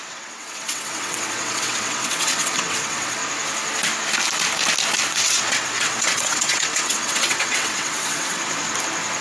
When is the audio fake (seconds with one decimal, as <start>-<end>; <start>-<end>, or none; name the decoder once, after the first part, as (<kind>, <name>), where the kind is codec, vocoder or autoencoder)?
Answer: 0.0-3.2 (vocoder, WaveNeXt); 5.1-8.4